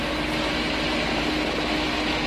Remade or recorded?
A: recorded